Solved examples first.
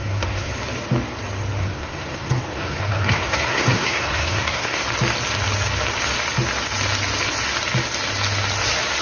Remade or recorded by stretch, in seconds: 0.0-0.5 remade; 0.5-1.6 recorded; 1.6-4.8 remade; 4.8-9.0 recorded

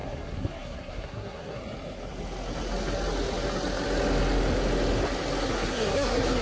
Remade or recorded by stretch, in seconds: 0.0-1.6 remade; 1.6-5.4 recorded; 5.4-6.4 remade

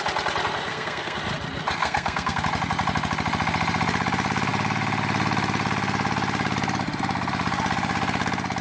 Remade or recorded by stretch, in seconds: 0.0-0.7 recorded; 0.7-1.2 remade; 1.2-1.8 recorded; 1.8-2.4 remade; 2.4-8.6 recorded